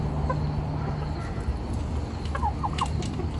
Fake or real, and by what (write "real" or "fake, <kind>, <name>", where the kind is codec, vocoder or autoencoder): real